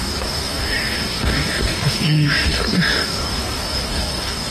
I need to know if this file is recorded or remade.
remade